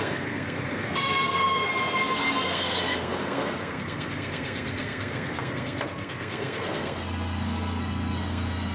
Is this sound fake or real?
fake